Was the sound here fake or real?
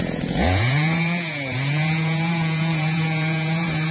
fake